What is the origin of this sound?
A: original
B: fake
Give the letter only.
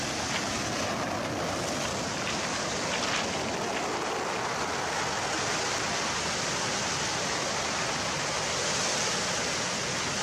A